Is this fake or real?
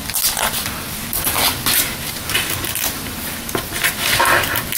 real